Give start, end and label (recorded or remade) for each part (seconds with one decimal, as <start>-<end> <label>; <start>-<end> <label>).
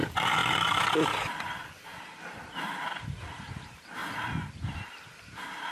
0.0-4.0 remade; 4.0-4.6 recorded; 4.6-5.7 remade